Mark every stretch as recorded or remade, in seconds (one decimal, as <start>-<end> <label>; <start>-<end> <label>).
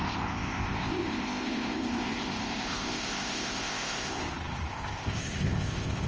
0.0-4.2 remade; 4.2-4.7 recorded; 4.7-6.1 remade